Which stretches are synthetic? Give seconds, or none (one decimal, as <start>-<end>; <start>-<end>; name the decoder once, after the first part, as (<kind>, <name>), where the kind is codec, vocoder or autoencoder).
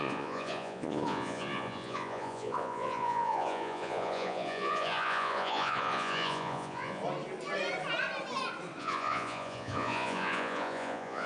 0.0-7.0 (vocoder, Vocos); 8.8-11.3